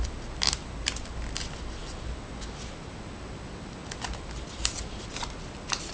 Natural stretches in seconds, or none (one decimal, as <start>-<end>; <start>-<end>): 0.0-5.9